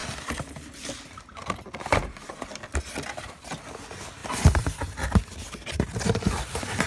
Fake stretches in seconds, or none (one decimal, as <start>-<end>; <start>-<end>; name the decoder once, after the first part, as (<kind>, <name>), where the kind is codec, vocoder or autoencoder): none